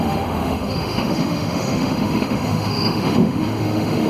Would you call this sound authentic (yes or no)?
no